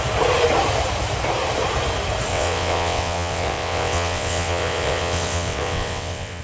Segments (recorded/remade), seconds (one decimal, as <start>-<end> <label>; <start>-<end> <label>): 0.0-2.3 recorded; 2.3-6.4 remade